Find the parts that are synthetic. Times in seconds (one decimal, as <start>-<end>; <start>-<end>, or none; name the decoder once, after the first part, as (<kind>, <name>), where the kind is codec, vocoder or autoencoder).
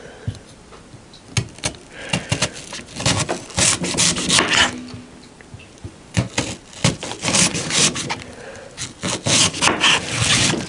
5.8-6.3 (vocoder, Vocos); 7.5-8.1